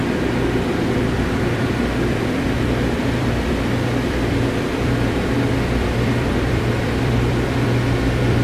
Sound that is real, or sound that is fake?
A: fake